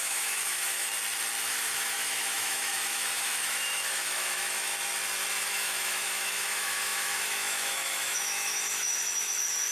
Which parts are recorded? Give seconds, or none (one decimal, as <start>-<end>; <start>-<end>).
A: 0.9-1.5; 4.7-5.4